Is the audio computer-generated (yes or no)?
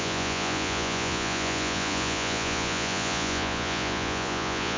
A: yes